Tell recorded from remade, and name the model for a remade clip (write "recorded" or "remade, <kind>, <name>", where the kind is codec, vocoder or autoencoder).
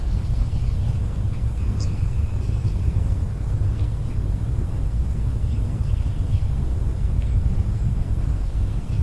remade, codec, SNAC